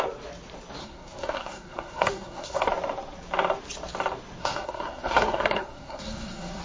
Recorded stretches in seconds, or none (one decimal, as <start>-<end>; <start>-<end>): 0.0-0.8; 2.7-4.4